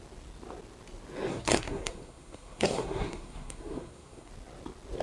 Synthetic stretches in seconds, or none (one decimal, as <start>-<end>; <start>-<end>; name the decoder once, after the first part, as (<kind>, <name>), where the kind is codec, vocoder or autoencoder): 1.3-4.3 (codec, SNAC)